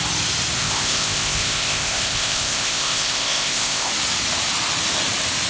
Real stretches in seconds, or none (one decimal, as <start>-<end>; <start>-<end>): 0.0-0.6; 3.9-5.5

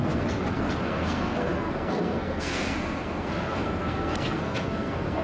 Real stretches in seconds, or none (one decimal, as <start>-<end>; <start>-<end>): none

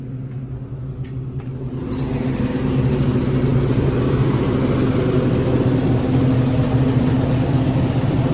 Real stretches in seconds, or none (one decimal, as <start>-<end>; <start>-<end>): 0.0-8.3

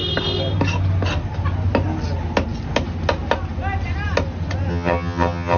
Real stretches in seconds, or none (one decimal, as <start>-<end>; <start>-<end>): 0.0-4.7